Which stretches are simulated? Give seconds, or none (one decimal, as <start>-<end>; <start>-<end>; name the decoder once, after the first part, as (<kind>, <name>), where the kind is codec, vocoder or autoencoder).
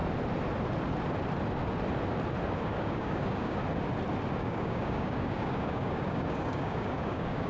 2.6-3.6 (codec, DAC); 4.4-7.5